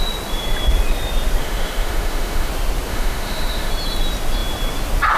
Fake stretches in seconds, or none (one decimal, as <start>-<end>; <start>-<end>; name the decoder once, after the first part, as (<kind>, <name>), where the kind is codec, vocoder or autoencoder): 1.4-2.5 (autoencoder, DAC-VAE); 2.9-3.7